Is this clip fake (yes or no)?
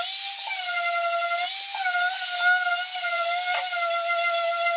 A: no